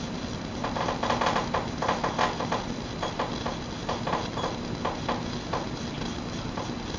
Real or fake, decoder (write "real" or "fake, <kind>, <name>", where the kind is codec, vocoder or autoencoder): real